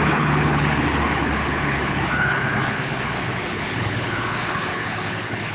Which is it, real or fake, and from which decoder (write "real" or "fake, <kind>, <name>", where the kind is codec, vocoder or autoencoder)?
fake, codec, HILCodec